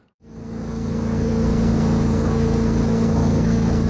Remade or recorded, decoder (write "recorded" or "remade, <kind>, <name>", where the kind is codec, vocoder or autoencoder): remade, codec, SNAC